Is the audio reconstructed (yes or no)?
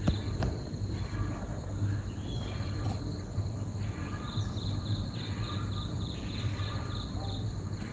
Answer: yes